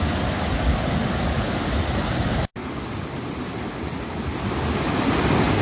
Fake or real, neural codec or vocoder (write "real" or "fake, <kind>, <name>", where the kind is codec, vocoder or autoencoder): real